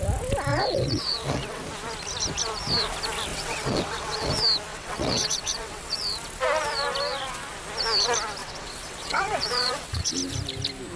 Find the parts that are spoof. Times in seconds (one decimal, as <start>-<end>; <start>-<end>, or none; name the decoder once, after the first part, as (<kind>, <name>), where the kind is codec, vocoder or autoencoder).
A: 0.5-1.6 (vocoder, WaveNeXt); 3.3-4.3; 4.7-6.0; 8.4-10.1